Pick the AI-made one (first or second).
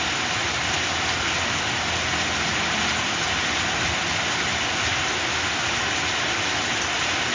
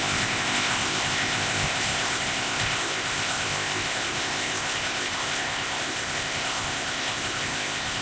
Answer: second